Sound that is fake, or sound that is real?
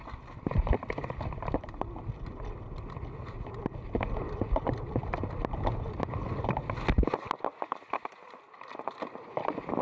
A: real